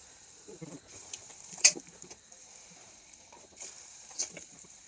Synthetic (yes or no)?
yes